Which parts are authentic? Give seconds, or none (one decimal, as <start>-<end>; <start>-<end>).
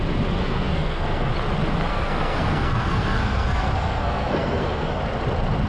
0.0-0.4; 1.3-1.9; 5.0-5.7